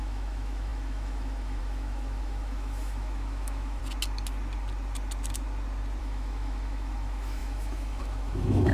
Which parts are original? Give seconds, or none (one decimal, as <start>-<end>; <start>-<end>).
3.8-6.0